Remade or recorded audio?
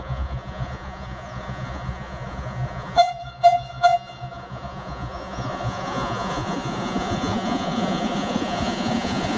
remade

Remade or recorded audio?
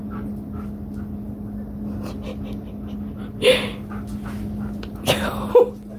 recorded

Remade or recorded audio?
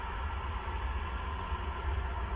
recorded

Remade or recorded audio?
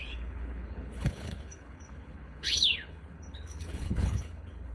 remade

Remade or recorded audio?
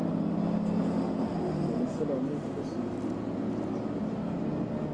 recorded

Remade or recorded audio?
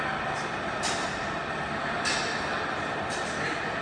recorded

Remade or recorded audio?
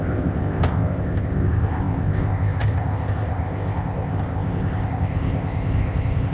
remade